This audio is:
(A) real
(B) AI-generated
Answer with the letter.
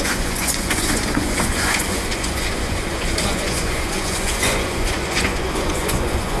B